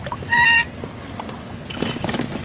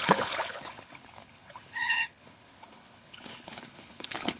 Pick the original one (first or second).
first